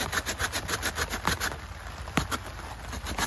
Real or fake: real